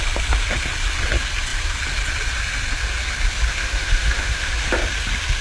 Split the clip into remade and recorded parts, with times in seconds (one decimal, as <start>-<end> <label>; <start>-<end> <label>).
0.0-3.5 recorded; 3.5-4.5 remade; 4.5-5.4 recorded